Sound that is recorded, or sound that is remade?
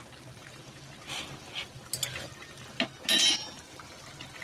recorded